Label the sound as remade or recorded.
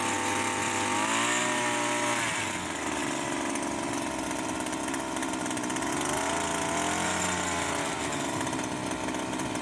recorded